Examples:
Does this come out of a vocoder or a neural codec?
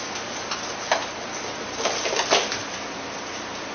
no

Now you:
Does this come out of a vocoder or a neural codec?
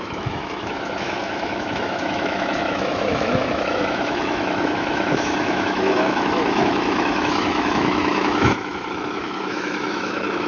yes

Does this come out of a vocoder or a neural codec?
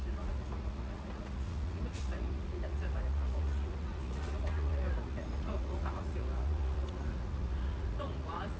yes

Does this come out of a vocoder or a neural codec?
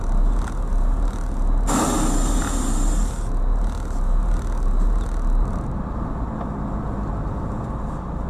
no